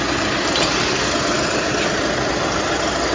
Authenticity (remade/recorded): recorded